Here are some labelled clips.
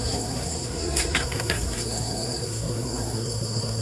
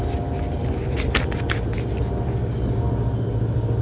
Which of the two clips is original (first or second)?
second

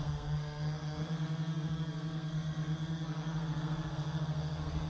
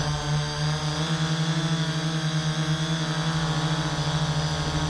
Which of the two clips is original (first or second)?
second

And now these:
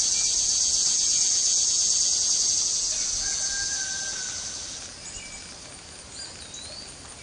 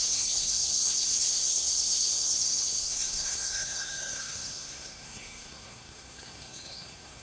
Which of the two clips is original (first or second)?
first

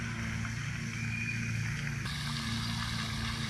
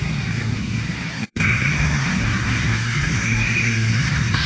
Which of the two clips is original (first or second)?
first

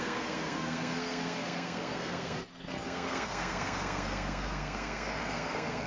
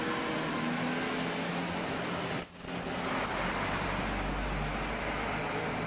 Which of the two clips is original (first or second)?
second